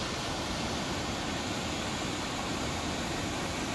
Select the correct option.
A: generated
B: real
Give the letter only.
B